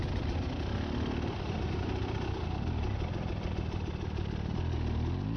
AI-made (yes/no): no